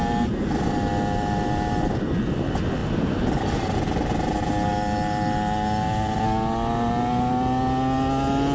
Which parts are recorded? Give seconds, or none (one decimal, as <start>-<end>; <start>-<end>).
0.0-8.5